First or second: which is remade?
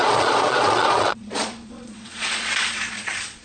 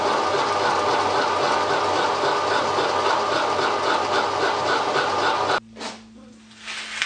first